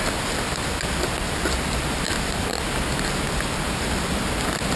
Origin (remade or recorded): recorded